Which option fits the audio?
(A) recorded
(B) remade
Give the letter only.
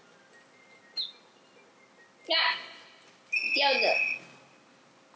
A